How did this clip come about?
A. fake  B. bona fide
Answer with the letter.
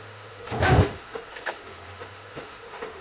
A